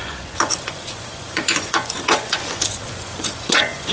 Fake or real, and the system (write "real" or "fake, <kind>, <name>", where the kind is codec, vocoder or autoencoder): fake, vocoder, Vocos